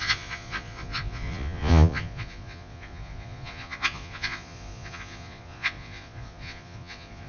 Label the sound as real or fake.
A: fake